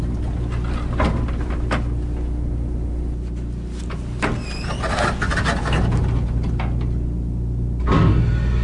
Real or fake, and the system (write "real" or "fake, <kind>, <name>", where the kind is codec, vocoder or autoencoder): real